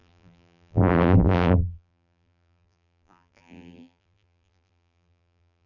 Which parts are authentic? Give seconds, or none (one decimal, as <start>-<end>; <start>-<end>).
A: none